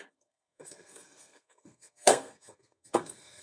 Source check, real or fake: fake